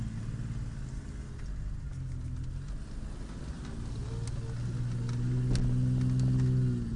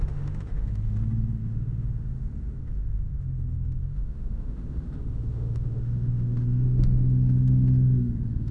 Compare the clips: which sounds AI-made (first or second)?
second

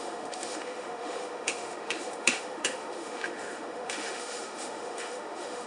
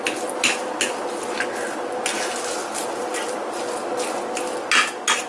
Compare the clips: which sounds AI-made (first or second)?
first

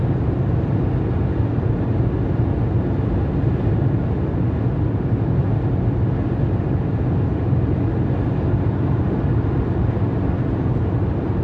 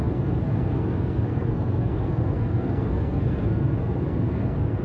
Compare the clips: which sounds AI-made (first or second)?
second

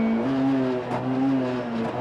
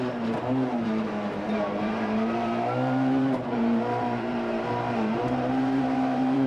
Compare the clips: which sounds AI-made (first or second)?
second